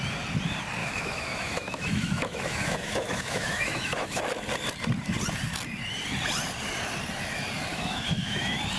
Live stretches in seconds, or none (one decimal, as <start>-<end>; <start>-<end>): 0.0-0.8; 4.2-7.7; 8.4-8.8